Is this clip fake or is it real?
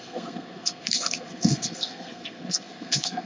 fake